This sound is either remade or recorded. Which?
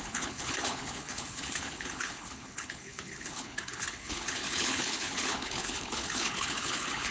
remade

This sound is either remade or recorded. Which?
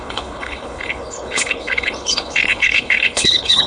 remade